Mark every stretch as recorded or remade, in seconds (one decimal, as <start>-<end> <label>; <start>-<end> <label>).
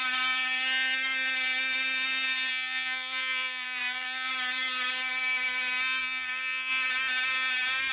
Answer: 0.0-2.5 recorded; 2.5-4.3 remade; 4.3-6.0 recorded; 6.0-6.7 remade; 6.7-7.9 recorded